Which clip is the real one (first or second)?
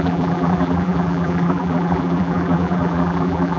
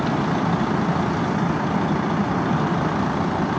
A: second